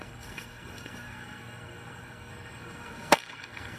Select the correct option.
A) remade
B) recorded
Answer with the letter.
A